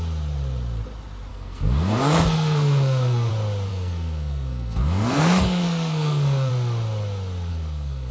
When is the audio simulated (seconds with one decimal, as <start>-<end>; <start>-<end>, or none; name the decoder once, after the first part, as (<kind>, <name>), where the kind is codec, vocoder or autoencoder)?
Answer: 1.3-3.3 (codec, SNAC); 3.7-6.5; 7.5-8.1